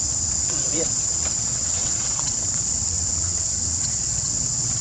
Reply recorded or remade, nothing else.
remade